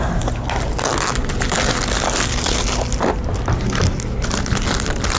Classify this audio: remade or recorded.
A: recorded